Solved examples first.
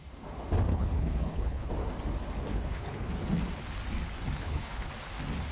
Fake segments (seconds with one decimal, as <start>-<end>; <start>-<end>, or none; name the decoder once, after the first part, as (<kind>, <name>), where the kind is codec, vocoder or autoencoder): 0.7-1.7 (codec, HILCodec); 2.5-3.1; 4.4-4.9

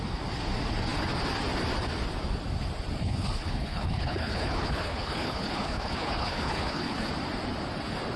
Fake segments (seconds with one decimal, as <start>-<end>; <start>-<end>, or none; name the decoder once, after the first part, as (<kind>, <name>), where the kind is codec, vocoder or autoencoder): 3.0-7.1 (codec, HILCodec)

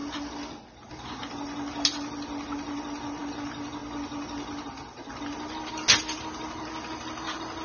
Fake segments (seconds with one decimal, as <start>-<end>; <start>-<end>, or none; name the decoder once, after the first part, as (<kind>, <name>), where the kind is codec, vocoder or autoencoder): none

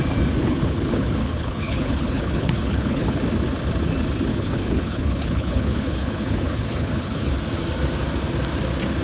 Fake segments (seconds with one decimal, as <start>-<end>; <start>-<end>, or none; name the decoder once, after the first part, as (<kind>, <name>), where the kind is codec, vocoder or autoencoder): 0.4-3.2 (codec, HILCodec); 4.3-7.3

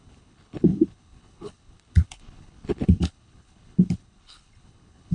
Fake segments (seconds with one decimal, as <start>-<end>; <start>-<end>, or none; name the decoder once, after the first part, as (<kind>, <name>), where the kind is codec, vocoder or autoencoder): 0.0-5.1 (codec, HILCodec)

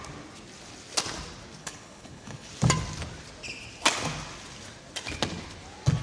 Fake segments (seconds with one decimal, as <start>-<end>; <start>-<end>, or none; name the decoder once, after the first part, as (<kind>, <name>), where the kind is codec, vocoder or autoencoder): 1.6-2.5 (codec, HILCodec)

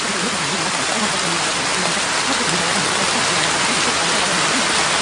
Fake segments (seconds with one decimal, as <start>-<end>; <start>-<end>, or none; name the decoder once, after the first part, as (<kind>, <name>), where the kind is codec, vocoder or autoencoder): none

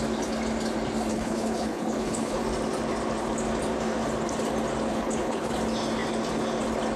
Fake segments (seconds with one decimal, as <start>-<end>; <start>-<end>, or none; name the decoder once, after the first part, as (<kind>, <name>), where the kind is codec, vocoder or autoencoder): 1.1-2.4 (codec, HILCodec); 4.9-5.5